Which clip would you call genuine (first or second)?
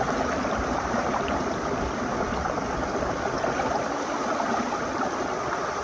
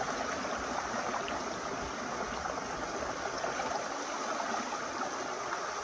second